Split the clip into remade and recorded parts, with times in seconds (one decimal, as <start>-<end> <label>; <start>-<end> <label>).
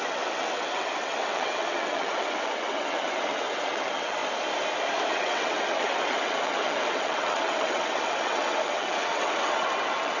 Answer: 0.0-4.2 remade; 4.2-5.1 recorded; 5.1-10.2 remade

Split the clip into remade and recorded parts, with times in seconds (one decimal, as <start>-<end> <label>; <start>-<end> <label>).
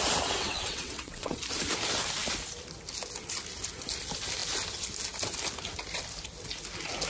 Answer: 0.0-0.4 recorded; 0.4-1.4 remade; 1.4-7.1 recorded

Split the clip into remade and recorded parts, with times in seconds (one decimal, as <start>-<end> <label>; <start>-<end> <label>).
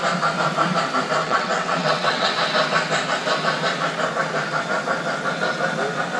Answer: 0.0-1.2 recorded; 1.2-2.3 remade; 2.3-6.2 recorded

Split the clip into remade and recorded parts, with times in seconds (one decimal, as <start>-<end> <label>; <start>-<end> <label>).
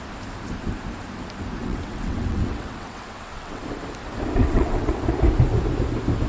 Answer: 0.0-1.6 recorded; 1.6-3.6 remade; 3.6-4.4 recorded; 4.4-4.9 remade; 4.9-6.3 recorded